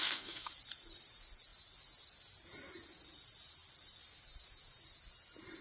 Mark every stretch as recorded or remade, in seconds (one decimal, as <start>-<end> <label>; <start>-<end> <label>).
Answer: 0.0-0.5 remade; 0.5-5.6 recorded